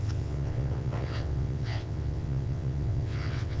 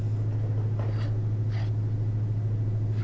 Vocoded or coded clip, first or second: first